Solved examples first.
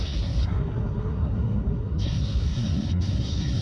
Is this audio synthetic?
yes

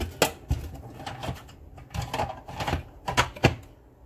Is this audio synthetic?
no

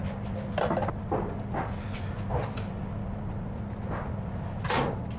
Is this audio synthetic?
no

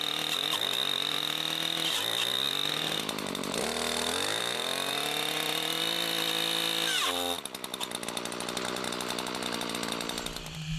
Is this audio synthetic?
no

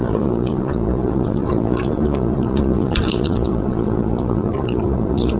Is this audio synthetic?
yes